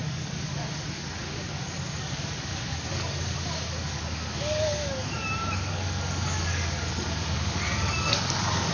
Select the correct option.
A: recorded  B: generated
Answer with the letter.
B